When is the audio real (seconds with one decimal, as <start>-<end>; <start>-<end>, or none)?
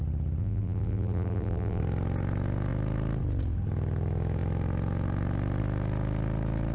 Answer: 0.0-0.4; 1.8-6.7